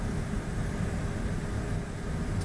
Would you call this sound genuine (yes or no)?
yes